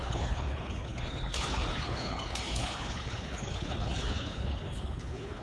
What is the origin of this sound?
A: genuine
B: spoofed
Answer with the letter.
B